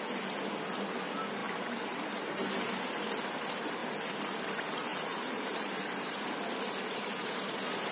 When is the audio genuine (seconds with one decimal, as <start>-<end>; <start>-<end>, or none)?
0.0-1.4; 2.3-4.9; 6.2-7.9